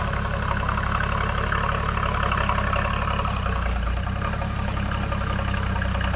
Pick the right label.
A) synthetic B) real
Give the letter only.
B